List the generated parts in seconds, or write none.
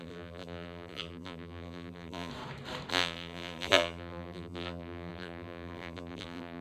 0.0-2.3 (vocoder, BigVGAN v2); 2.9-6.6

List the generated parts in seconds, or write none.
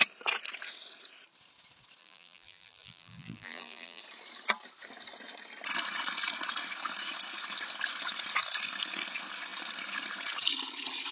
2.0-4.0 (vocoder, BigVGAN v2)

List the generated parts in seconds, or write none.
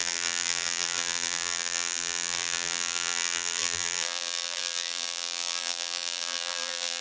0.0-7.0 (vocoder, BigVGAN v2)